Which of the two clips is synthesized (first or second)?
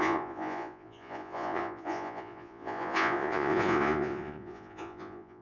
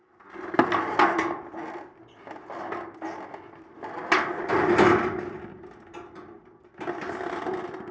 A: first